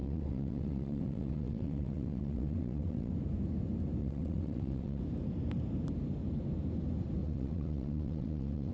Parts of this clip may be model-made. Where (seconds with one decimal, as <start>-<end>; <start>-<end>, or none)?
0.0-3.1; 4.0-5.0; 7.2-8.7